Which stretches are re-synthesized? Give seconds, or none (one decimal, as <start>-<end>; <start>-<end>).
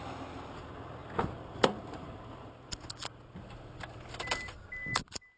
none